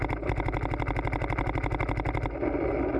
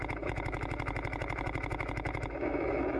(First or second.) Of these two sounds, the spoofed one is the second